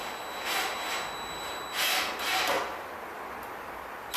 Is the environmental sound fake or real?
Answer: real